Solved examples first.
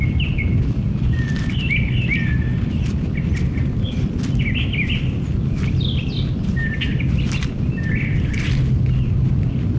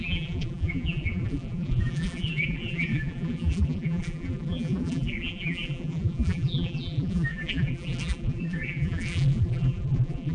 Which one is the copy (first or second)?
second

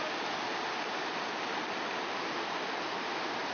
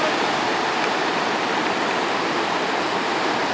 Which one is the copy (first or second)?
second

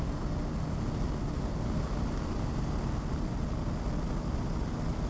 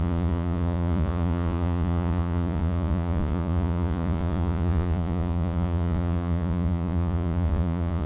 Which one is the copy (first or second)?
second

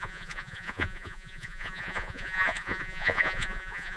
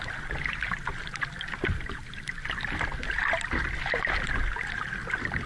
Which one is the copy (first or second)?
first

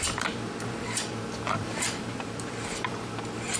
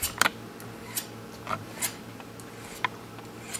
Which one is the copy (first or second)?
first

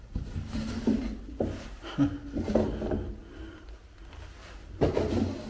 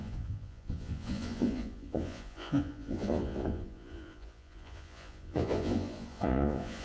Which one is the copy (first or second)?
second